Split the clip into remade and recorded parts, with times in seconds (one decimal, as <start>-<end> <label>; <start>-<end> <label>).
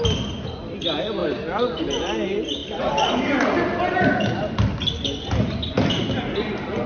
0.0-2.6 recorded; 2.6-3.2 remade; 3.2-6.9 recorded